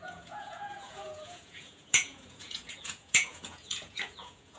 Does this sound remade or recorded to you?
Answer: remade